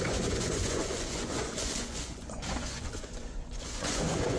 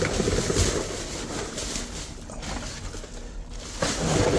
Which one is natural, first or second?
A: second